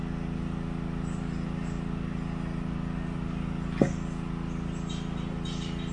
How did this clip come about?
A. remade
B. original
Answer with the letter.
B